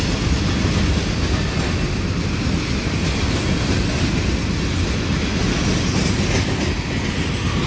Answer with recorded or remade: recorded